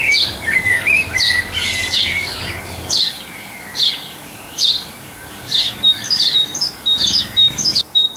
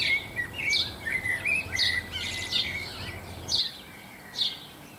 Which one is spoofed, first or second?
first